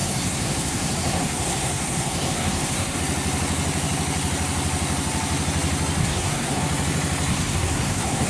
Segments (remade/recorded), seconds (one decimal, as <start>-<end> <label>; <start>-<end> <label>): 0.0-3.0 remade; 3.0-6.0 recorded; 6.0-6.6 remade; 6.6-7.3 recorded; 7.3-8.3 remade